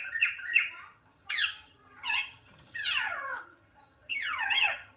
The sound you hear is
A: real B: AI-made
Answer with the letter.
B